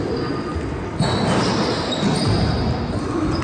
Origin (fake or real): real